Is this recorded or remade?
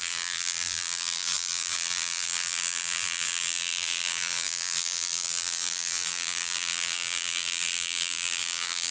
remade